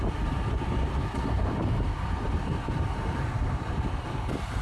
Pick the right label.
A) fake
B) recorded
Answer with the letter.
A